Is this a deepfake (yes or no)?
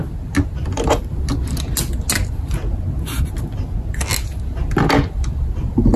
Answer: no